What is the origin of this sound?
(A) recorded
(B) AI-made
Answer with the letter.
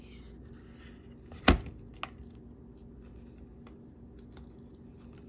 A